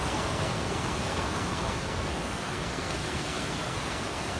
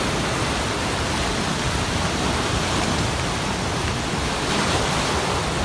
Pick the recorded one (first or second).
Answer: second